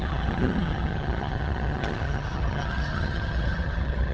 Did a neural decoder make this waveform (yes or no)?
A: yes